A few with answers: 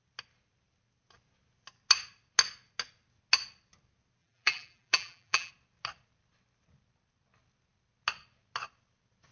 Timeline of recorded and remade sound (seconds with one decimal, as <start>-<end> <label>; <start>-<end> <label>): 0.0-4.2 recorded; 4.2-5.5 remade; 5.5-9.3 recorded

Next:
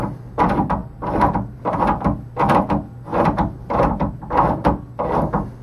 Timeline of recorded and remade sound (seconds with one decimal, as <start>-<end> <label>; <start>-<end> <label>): 0.0-0.8 recorded; 0.8-1.6 remade; 1.6-3.1 recorded; 3.1-3.8 remade; 3.8-5.6 recorded

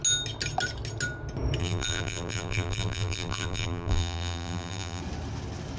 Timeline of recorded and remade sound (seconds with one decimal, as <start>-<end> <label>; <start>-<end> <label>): 0.0-1.6 recorded; 1.6-5.0 remade; 5.0-5.8 recorded

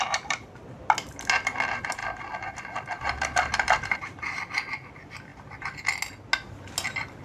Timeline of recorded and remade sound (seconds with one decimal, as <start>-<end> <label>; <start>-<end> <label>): 0.0-7.2 recorded

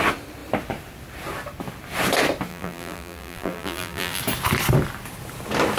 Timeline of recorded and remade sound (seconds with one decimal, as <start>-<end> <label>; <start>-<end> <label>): 0.0-2.5 recorded; 2.5-4.2 remade; 4.2-5.8 recorded